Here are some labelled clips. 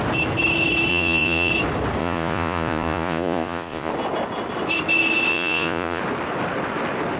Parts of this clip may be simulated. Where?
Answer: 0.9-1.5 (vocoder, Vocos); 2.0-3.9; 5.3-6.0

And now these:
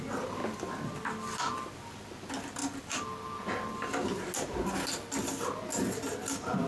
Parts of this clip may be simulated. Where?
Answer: none

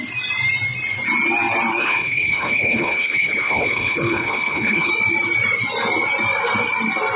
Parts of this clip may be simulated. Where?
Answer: 1.8-4.9 (codec, HILCodec)

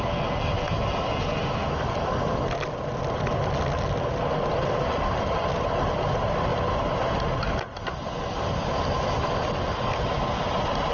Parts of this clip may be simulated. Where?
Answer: none

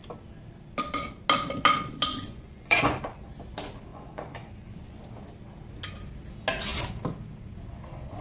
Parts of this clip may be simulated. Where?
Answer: 2.1-3.2 (vocoder, Vocos); 3.9-5.0

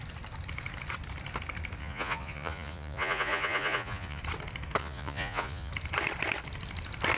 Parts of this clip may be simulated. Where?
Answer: 1.8-4.2 (vocoder, Vocos); 4.8-5.7

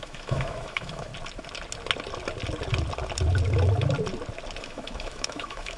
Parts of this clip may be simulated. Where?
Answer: 0.0-1.1 (autoencoder, DAC-VAE); 4.6-5.8

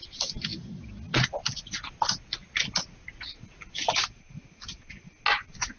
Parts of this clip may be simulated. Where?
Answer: none